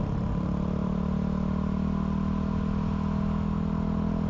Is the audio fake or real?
real